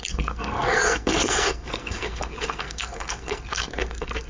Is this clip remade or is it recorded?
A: remade